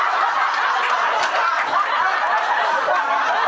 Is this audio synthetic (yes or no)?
no